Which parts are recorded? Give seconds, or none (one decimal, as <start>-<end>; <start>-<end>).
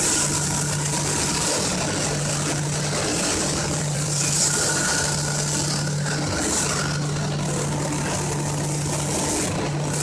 0.0-3.1; 4.3-10.0